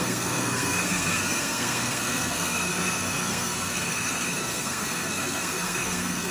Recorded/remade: remade